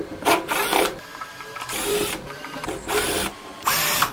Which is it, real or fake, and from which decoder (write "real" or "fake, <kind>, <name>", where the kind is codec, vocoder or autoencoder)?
fake, vocoder, BigVGAN v2